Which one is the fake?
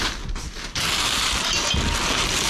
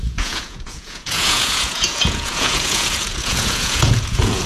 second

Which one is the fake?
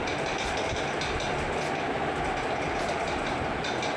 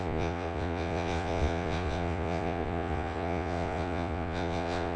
second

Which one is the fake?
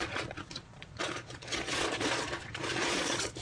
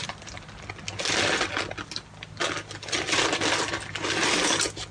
first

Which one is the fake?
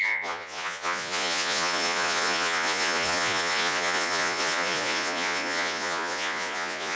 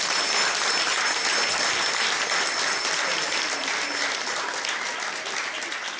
first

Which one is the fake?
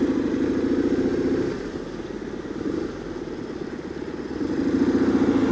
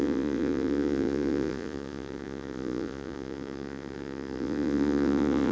second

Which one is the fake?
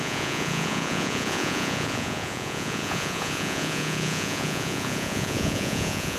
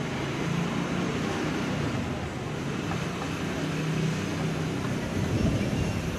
first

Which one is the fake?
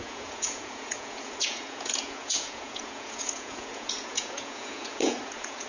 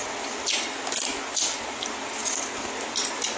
first